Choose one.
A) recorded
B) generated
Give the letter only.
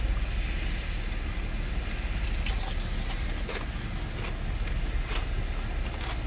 A